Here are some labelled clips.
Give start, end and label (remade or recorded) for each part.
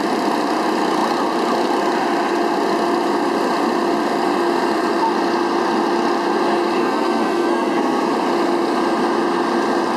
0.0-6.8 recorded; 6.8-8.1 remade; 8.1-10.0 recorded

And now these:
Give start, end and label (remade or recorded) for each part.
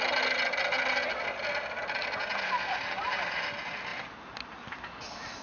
0.0-5.4 recorded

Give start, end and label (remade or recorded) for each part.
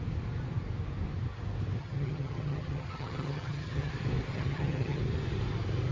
0.0-1.8 recorded; 1.8-3.9 remade; 3.9-4.3 recorded; 4.3-5.0 remade; 5.0-5.9 recorded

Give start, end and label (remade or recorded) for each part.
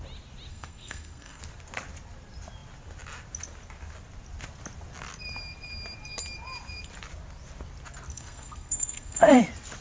0.0-0.5 recorded; 0.5-1.4 remade; 1.4-8.1 recorded; 8.1-9.4 remade; 9.4-9.8 recorded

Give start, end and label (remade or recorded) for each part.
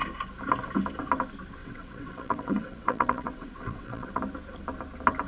0.0-1.6 recorded; 1.6-4.2 remade; 4.2-5.3 recorded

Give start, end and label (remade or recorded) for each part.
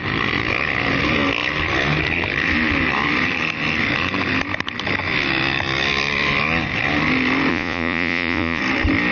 0.0-7.5 recorded; 7.5-8.6 remade; 8.6-9.1 recorded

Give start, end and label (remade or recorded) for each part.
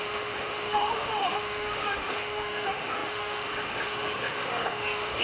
0.0-5.2 remade